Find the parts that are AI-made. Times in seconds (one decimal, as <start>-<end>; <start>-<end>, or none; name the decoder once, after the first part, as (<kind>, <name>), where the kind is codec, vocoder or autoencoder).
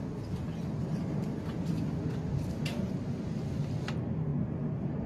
0.8-1.7 (vocoder, BigVGAN v2); 4.3-5.1